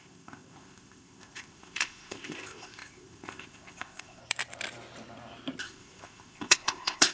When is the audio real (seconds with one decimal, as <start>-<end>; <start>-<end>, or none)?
4.2-5.6